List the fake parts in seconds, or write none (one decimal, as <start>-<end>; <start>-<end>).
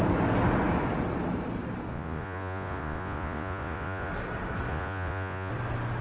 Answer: 1.9-4.1; 4.7-5.5